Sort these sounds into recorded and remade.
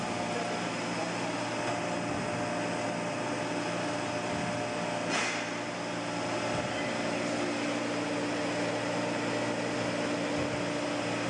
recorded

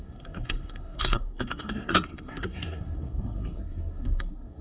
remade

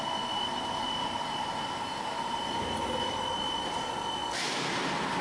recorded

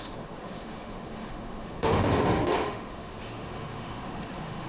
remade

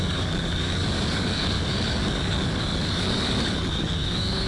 remade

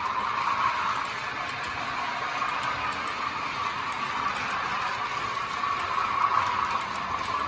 recorded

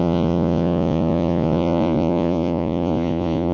remade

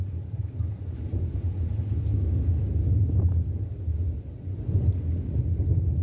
recorded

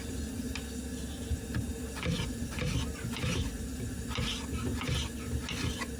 recorded